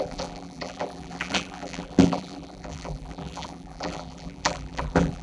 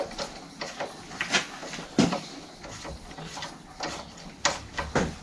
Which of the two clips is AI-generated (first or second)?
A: first